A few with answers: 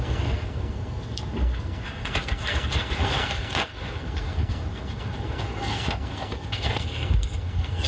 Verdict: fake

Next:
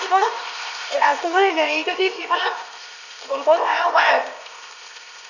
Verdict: fake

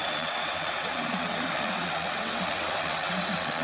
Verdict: fake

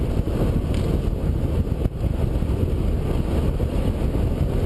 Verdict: real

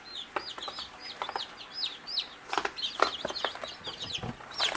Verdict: real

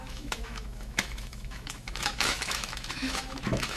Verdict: fake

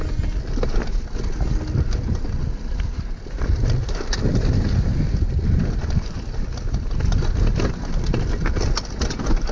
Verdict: real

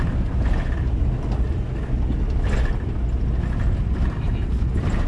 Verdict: real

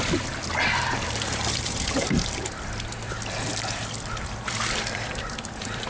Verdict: fake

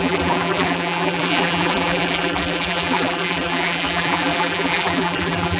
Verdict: fake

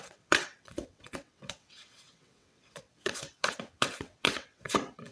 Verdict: fake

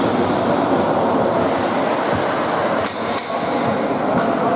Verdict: real